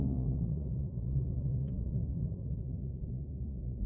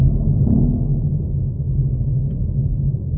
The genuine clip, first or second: second